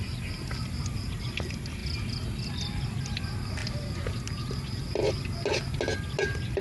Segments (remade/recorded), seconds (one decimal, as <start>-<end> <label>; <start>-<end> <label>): 0.0-6.6 recorded